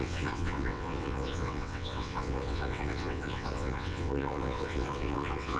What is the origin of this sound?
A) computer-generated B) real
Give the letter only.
A